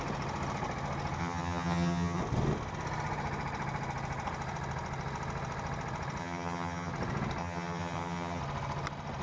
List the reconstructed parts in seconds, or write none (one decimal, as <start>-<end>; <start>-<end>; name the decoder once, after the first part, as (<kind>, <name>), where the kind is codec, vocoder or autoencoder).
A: 1.2-2.2 (vocoder, HiFi-GAN); 6.2-6.9; 7.4-8.4